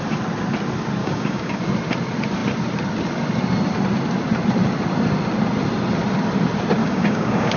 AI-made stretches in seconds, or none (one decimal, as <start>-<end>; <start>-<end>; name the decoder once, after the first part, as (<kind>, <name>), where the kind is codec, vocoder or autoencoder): 1.0-1.6 (codec, DAC); 6.8-7.6